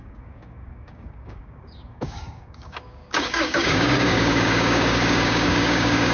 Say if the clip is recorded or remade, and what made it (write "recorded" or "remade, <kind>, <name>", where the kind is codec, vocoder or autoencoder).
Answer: remade, codec, DAC